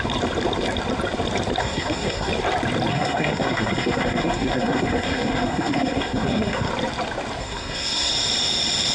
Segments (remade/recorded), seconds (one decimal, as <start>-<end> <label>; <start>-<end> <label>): 0.0-1.6 recorded; 1.6-2.3 remade; 2.3-2.9 recorded; 2.9-6.7 remade; 6.7-7.4 recorded; 7.4-8.1 remade; 8.1-8.9 recorded